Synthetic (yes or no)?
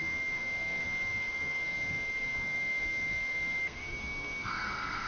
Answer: yes